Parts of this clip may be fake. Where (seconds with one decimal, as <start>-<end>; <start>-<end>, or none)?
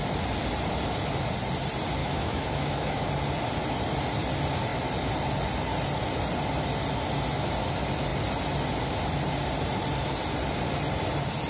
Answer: 2.0-3.1